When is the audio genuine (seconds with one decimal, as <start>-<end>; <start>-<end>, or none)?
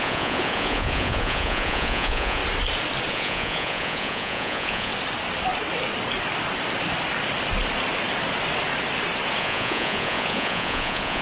2.4-3.1; 4.9-9.4